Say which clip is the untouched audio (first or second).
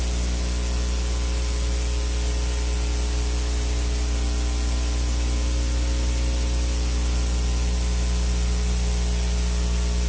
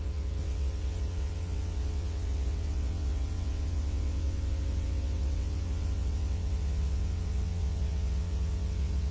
first